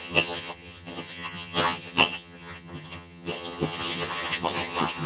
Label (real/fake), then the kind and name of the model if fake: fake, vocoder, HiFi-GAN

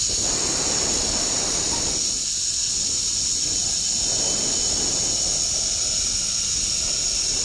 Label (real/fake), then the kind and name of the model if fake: real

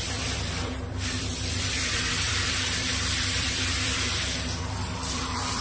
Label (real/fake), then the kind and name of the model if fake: fake, vocoder, BigVGAN v2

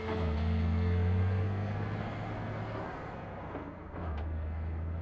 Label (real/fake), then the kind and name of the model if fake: fake, codec, SNAC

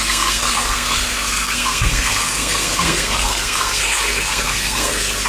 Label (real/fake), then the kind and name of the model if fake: fake, codec, SNAC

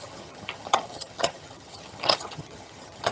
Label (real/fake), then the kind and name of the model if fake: fake, vocoder, HiFi-GAN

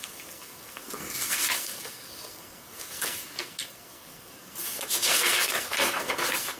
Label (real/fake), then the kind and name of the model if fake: fake, codec, SNAC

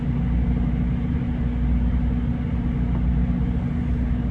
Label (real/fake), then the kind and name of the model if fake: real